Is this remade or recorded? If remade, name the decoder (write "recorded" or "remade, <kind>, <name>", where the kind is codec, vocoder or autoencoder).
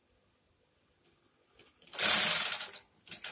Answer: recorded